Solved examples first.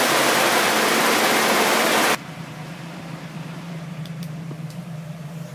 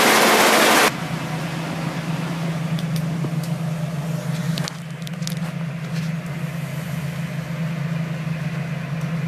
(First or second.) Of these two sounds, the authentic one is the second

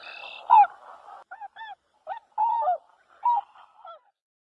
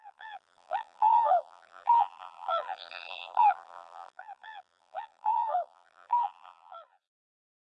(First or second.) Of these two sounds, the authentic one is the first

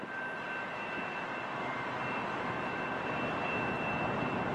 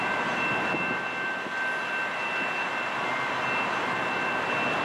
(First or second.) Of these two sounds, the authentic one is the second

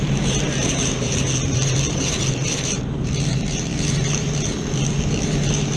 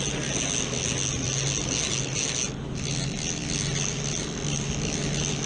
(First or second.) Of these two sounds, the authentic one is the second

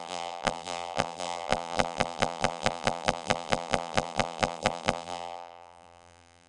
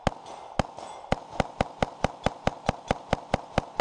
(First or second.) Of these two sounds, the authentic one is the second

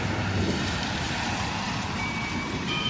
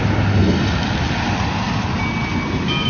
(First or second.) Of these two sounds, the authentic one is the second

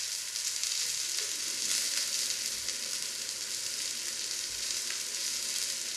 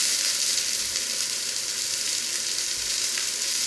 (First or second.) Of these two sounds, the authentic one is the first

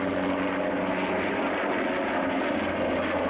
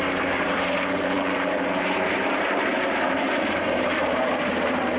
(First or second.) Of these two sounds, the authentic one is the first